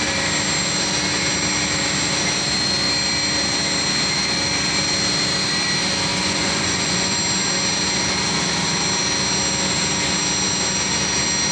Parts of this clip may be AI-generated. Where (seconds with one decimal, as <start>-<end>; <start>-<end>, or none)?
6.1-7.2